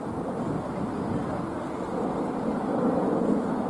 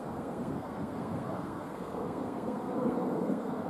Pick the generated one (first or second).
second